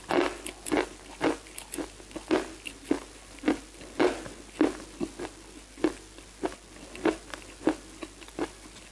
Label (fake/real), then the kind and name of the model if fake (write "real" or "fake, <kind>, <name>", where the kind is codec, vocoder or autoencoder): real